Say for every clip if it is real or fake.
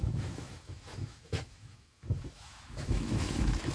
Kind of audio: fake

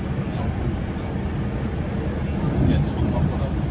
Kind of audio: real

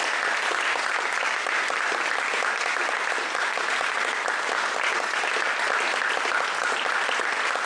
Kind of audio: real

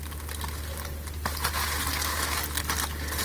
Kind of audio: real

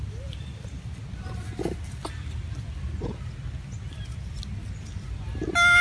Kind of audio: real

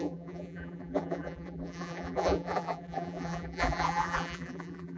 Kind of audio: fake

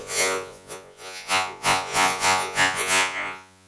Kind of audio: fake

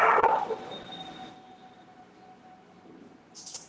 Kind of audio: real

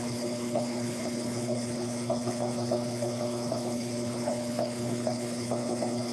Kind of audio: fake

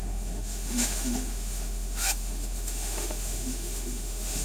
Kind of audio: fake